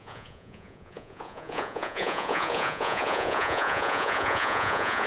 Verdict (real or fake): fake